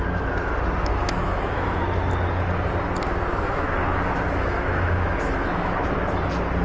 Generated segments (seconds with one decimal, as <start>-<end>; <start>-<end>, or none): 0.9-1.8; 3.3-5.7